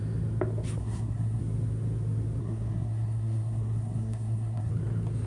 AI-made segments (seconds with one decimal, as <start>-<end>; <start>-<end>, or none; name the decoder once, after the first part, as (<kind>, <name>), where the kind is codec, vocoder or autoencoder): 0.8-1.4 (codec, SNAC); 2.4-4.7